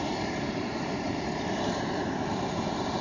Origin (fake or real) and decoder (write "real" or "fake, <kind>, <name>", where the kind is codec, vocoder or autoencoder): fake, vocoder, BigVGAN v2